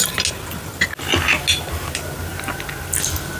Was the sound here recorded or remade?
recorded